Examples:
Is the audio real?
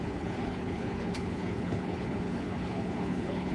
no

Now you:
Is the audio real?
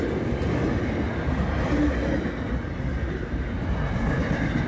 yes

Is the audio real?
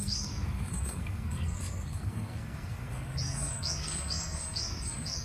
no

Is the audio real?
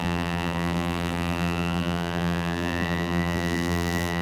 no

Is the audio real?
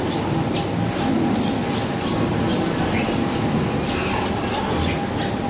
yes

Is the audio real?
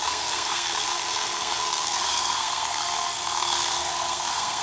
no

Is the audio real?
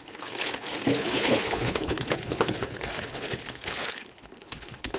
no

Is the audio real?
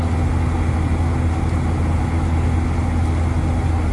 yes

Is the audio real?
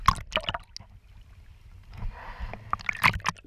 yes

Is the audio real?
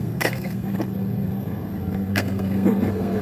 no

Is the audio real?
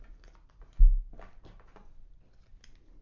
yes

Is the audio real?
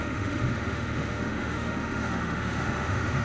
no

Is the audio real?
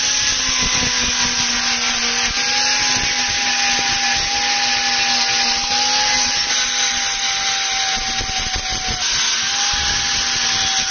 yes